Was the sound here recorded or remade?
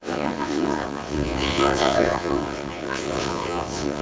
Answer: remade